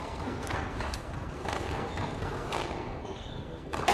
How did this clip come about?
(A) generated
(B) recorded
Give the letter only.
A